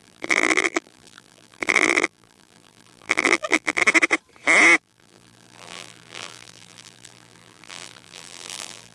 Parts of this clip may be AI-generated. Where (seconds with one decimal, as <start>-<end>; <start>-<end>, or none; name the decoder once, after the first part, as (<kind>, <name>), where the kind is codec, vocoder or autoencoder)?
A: 0.0-3.8 (vocoder, BigVGAN v2); 4.8-8.9